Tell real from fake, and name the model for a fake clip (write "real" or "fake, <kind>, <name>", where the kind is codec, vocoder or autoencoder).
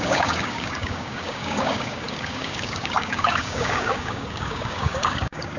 fake, codec, DAC